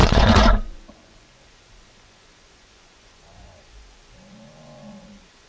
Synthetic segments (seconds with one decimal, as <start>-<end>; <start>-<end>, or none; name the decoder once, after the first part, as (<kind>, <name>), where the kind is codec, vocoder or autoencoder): 0.0-5.5 (vocoder, Vocos)